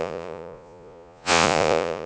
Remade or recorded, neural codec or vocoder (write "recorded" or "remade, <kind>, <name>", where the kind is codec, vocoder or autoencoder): remade, vocoder, Vocos